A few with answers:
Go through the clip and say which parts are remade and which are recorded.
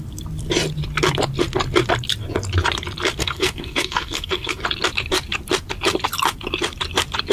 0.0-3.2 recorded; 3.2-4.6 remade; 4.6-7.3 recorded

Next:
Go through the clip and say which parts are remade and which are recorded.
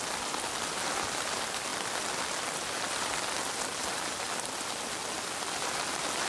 0.0-6.3 recorded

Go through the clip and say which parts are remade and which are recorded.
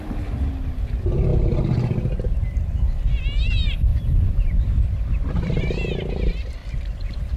0.0-3.9 recorded; 3.9-4.6 remade; 4.6-6.6 recorded; 6.6-7.4 remade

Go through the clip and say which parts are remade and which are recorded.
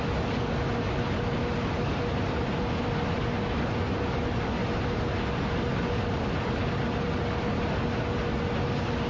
0.0-9.1 recorded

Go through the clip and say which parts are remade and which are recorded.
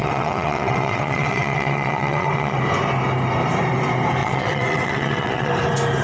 0.0-2.6 remade; 2.6-4.2 recorded; 4.2-5.5 remade; 5.5-6.0 recorded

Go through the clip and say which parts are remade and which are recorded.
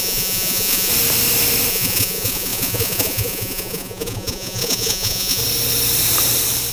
0.0-0.9 remade; 0.9-1.7 recorded; 1.7-5.4 remade; 5.4-6.7 recorded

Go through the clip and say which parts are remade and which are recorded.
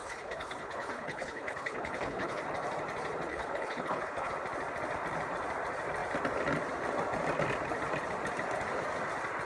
0.0-2.4 remade; 2.4-3.3 recorded; 3.3-4.3 remade; 4.3-9.5 recorded